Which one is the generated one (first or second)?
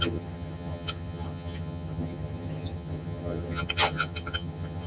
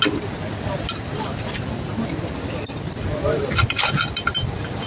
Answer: first